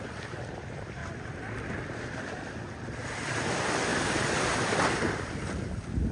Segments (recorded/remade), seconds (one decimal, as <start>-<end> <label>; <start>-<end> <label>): 0.0-1.0 recorded; 1.0-1.5 remade; 1.5-6.1 recorded